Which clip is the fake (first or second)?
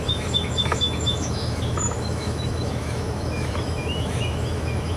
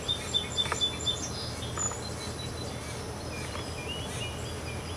first